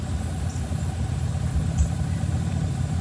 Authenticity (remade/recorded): recorded